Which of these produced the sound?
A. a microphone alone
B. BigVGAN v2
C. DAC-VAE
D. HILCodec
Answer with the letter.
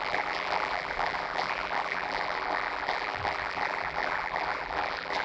B